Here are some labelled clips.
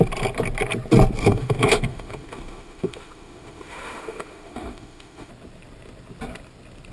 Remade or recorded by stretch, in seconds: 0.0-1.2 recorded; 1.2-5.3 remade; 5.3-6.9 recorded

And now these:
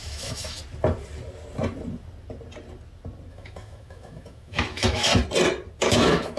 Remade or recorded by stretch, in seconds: 0.0-0.6 remade; 0.6-3.3 recorded; 3.3-5.1 remade; 5.1-5.8 recorded; 5.8-6.4 remade

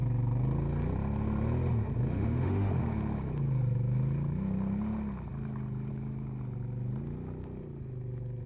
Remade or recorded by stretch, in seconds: 0.0-2.1 recorded; 2.1-2.7 remade; 2.7-8.5 recorded

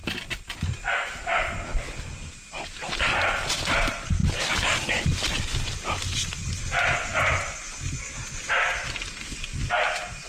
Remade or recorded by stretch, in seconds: 0.0-10.3 recorded

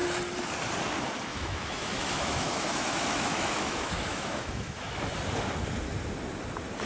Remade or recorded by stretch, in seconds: 0.0-1.3 recorded; 1.3-5.0 remade; 5.0-6.9 recorded

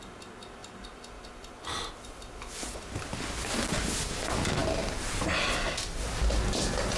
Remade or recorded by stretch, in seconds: 0.0-7.0 recorded

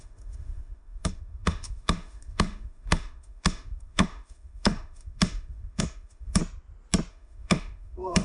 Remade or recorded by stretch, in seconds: 0.0-6.4 remade; 6.4-7.1 recorded; 7.1-8.2 remade